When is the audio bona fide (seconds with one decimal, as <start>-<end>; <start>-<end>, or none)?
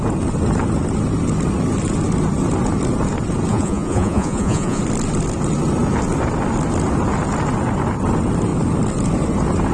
0.0-3.5; 4.8-9.7